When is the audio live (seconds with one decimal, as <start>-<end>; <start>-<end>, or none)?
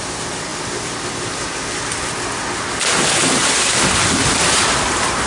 0.0-5.3